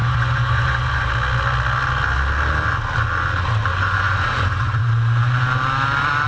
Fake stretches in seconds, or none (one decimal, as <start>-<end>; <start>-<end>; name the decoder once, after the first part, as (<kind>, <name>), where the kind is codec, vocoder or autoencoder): 0.0-1.1 (vocoder, Vocos); 3.7-4.9